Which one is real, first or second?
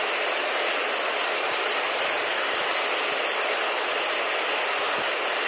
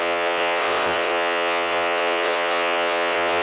first